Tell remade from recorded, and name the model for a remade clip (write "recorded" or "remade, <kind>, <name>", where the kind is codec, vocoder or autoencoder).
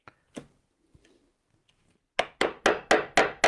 recorded